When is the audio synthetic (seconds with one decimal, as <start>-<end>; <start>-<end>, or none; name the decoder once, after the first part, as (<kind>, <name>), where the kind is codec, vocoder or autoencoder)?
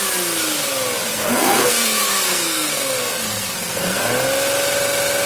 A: 1.1-4.0 (codec, SNAC)